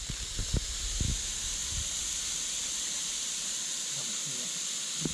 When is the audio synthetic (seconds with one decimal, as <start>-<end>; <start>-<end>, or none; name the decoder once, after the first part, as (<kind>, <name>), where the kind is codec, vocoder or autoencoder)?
none